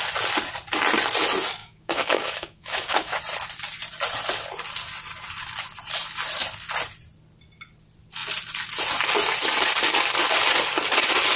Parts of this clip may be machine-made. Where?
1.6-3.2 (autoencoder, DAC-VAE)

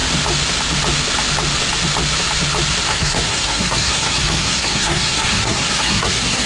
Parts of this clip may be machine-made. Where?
2.9-6.5 (codec, SNAC)

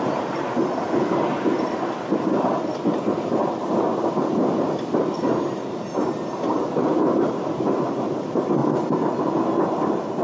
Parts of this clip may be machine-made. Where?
none

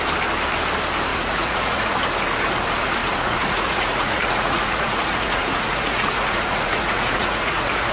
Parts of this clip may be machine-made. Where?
1.1-1.9 (vocoder, Vocos); 3.0-7.9

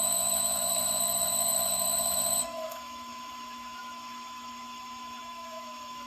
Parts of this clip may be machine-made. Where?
0.0-6.1 (autoencoder, DAC-VAE)

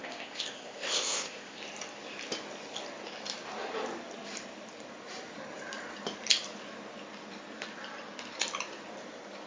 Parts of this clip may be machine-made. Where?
0.0-1.6 (codec, ZipCodec)

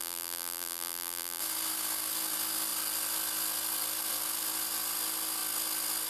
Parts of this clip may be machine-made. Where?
0.0-1.4 (vocoder, BigVGAN v2)